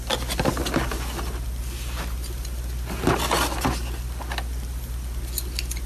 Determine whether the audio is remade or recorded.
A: recorded